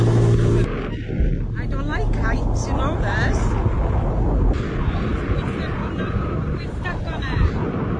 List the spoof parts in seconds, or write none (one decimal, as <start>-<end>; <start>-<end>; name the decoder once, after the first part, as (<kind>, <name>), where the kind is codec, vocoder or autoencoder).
5.1-8.0 (vocoder, BigVGAN v2)